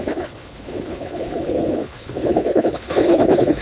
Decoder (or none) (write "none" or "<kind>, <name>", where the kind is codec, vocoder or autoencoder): codec, HILCodec